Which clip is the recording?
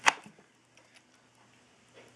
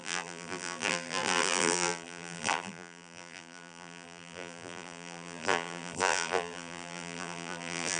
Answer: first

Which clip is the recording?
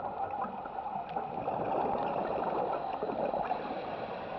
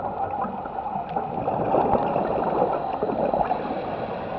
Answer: second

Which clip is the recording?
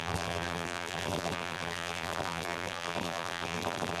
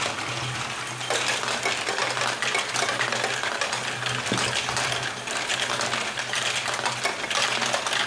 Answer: second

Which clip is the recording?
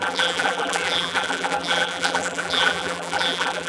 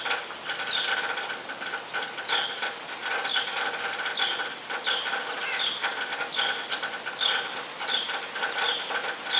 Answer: second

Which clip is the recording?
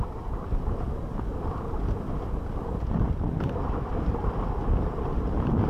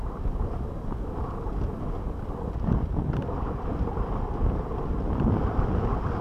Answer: second